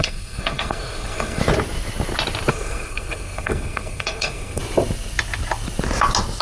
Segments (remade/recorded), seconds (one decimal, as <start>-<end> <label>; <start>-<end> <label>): 0.0-1.4 remade; 1.4-2.5 recorded; 2.5-4.6 remade; 4.6-6.4 recorded

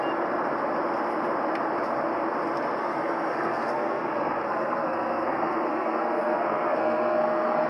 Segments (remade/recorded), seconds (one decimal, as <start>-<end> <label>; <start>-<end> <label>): 0.0-2.8 recorded; 2.8-7.7 remade

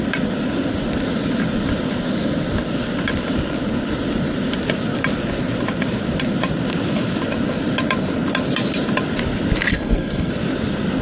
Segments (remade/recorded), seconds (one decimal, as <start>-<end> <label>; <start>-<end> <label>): 0.0-9.7 recorded; 9.7-10.3 remade; 10.3-11.0 recorded